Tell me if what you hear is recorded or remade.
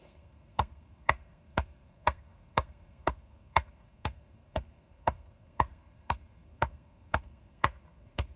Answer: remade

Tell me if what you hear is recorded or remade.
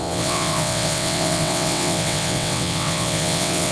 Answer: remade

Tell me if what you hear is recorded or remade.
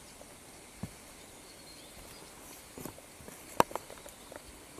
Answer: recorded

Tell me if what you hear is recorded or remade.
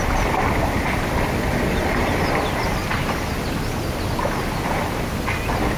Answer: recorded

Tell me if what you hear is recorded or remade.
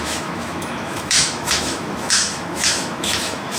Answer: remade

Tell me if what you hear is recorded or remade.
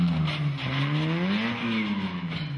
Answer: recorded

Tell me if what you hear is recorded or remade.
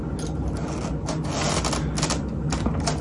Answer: recorded